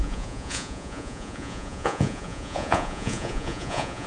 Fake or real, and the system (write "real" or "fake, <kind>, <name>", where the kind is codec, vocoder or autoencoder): fake, vocoder, Vocos